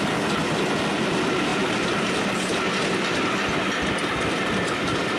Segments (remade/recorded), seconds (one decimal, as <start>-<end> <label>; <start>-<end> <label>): 0.0-5.2 recorded